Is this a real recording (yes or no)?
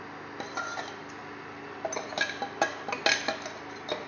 yes